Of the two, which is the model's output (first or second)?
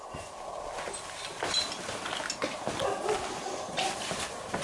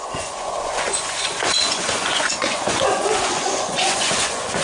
second